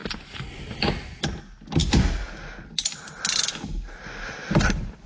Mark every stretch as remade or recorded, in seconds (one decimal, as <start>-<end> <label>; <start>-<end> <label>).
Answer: 0.0-5.1 recorded